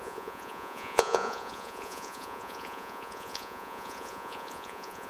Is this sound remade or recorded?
remade